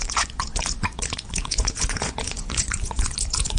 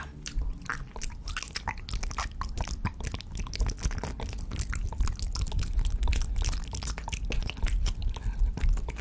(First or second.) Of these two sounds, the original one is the second